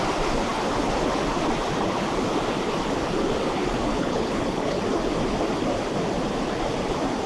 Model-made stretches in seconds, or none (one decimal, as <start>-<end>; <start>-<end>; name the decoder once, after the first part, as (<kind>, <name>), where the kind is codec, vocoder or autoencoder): 3.9-4.8 (codec, HILCodec)